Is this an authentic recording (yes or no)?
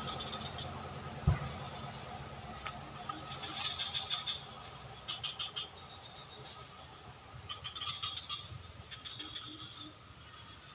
yes